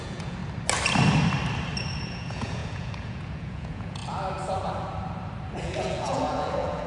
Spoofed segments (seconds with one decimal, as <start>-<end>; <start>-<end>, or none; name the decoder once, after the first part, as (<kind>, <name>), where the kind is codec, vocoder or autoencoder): 0.0-0.4 (vocoder, Vocos); 2.1-4.0; 5.6-6.9